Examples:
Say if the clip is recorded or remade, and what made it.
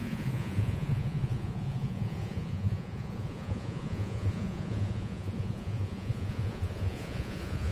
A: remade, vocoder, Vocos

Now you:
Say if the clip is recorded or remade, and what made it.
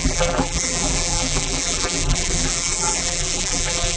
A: remade, vocoder, BigVGAN v2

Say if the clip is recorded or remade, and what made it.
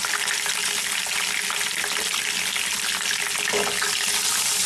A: recorded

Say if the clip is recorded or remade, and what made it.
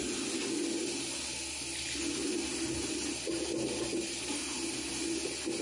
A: recorded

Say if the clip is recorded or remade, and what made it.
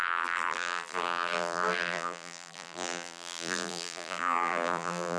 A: remade, vocoder, BigVGAN v2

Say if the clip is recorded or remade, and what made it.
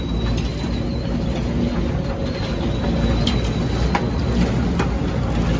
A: recorded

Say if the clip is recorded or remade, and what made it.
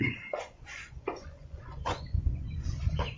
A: remade, vocoder, Vocos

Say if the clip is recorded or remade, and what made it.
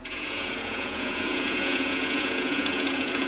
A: remade, vocoder, Vocos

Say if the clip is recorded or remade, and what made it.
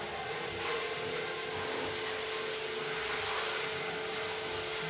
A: recorded